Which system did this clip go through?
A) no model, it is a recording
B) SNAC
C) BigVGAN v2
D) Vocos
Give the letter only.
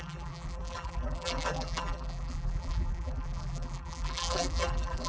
C